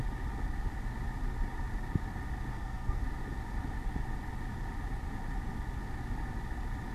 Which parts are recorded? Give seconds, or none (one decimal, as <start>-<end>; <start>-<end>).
0.0-2.5; 3.0-6.9